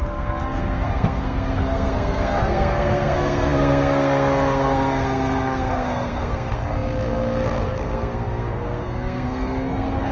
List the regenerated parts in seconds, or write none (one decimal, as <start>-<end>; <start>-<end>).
0.0-10.1